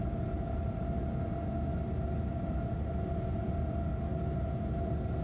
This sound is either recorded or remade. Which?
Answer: recorded